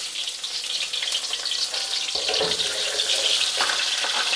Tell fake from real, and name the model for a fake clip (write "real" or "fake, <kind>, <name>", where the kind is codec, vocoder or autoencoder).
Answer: real